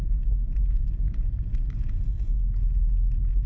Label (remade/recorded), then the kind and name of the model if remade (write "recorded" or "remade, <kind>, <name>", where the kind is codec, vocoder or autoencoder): recorded